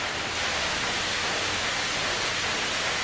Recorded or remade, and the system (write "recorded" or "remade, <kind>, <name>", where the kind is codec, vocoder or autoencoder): recorded